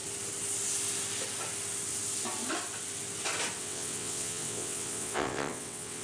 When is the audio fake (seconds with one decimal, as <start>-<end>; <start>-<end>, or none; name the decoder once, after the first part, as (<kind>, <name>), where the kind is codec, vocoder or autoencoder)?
3.6-6.0 (vocoder, WaveNeXt)